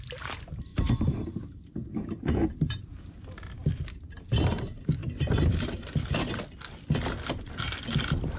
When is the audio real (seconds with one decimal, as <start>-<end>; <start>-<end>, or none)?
0.0-0.7; 2.8-5.0; 6.3-8.4